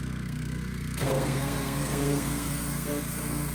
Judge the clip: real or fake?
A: fake